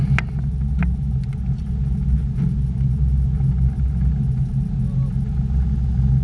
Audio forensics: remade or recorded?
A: recorded